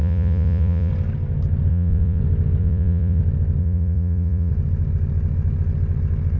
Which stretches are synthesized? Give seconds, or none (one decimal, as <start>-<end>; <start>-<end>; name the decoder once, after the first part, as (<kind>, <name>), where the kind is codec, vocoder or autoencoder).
0.0-0.9 (vocoder, Vocos); 1.7-2.2; 2.6-3.2; 3.6-4.5

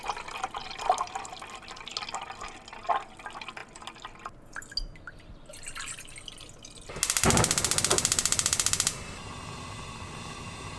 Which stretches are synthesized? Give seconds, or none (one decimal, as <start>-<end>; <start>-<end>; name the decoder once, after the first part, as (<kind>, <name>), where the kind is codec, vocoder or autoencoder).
none

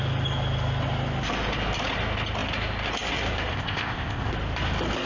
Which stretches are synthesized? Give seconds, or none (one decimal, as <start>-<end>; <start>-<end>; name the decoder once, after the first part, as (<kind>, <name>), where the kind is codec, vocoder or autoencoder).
3.5-4.3 (codec, ZipCodec)

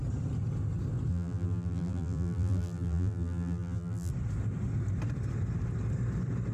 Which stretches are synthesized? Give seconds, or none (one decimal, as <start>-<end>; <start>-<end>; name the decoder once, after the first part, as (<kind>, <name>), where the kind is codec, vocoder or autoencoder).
1.1-4.1 (vocoder, BigVGAN v2)